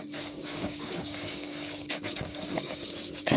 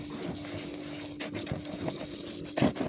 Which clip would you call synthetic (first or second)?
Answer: first